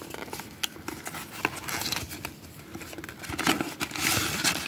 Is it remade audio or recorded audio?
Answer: recorded